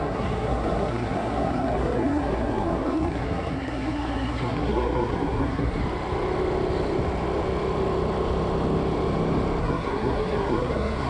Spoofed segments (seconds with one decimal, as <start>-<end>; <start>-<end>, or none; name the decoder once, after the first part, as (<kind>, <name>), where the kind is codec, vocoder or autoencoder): 0.0-5.8 (codec, SNAC); 9.6-11.1